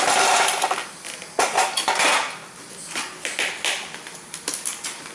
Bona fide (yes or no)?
yes